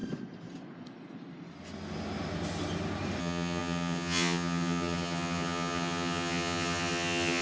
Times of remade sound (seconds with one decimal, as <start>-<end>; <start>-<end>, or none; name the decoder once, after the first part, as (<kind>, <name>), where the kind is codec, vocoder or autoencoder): 3.2-7.4 (vocoder, HiFi-GAN)